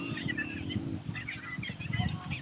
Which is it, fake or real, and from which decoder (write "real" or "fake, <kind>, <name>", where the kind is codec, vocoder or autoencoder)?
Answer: real